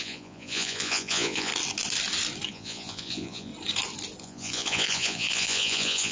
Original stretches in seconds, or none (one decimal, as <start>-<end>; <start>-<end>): 1.5-2.5; 3.5-4.2